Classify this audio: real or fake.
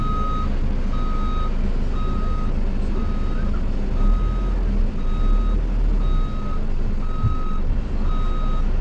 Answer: real